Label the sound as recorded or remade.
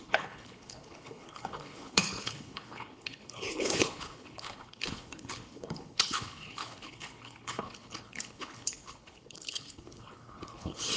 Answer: remade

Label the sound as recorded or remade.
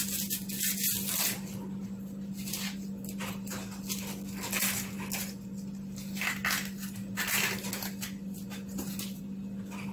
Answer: recorded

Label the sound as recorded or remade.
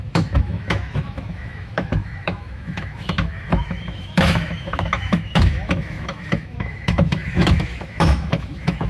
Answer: remade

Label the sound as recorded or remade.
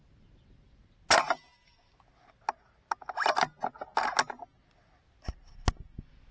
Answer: recorded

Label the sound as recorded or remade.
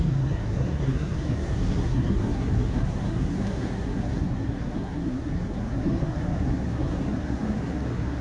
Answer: remade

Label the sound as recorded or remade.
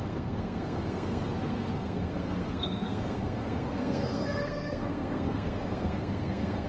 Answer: remade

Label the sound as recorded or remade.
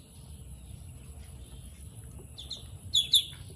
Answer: recorded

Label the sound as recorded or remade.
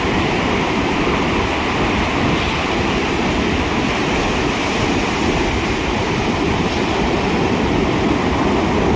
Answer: recorded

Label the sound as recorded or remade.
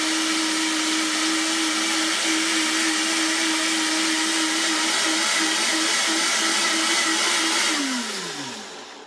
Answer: recorded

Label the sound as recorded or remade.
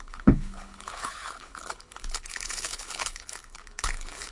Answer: remade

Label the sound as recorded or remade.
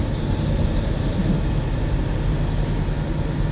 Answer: recorded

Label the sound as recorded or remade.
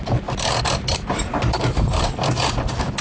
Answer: recorded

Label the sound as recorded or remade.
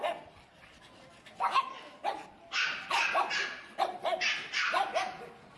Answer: recorded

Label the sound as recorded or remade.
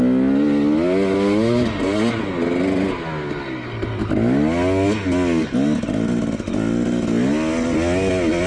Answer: recorded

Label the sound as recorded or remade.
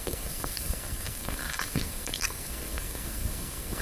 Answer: remade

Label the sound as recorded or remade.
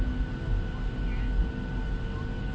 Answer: recorded